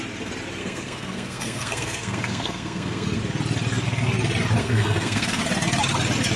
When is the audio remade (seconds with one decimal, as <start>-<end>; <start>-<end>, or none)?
0.6-3.2; 4.6-5.4